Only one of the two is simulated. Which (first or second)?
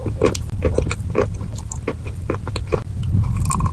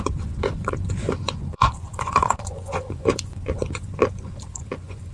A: second